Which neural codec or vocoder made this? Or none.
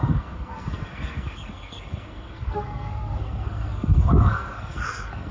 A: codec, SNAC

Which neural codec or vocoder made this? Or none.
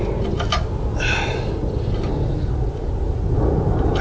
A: none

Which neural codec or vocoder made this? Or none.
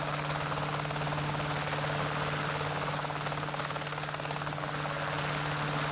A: none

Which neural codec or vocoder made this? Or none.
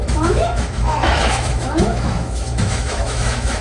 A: autoencoder, DAC-VAE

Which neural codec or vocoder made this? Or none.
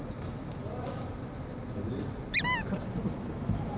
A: none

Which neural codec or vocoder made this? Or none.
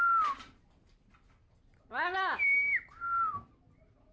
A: none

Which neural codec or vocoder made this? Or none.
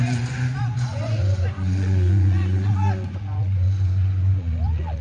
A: vocoder, Vocos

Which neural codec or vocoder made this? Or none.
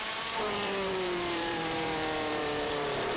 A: vocoder, BigVGAN v2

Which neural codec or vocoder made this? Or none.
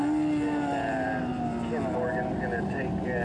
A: none